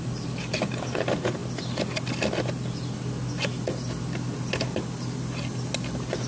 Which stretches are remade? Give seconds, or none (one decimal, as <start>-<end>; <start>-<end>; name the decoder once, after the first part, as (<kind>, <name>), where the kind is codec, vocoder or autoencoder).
none